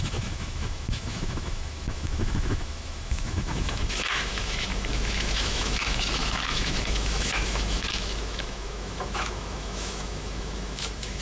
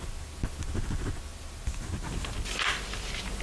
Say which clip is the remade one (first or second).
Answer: first